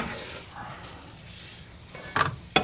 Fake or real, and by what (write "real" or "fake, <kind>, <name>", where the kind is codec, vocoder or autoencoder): real